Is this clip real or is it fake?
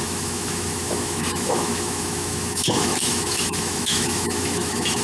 fake